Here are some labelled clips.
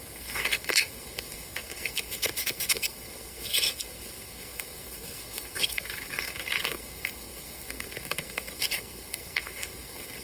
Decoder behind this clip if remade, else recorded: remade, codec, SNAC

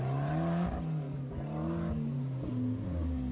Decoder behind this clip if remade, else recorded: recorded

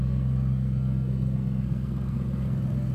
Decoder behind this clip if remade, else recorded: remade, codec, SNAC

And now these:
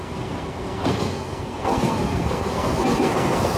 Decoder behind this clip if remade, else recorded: remade, codec, SNAC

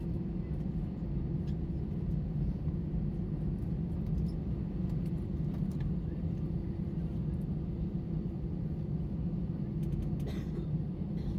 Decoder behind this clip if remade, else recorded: recorded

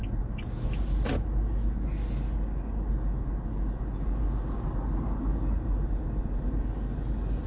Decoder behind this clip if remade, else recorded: recorded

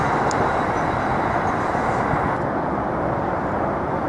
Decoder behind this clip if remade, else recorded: recorded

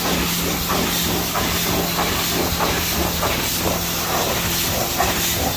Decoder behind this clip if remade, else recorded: recorded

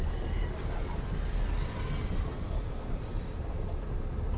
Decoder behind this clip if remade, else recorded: recorded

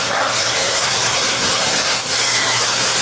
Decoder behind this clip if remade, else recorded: remade, codec, SNAC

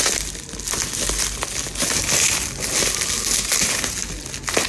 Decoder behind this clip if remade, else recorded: recorded